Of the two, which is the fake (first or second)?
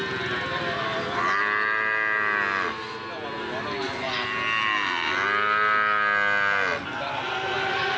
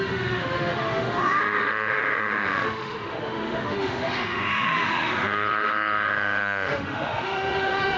second